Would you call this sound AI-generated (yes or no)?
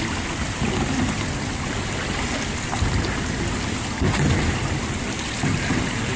no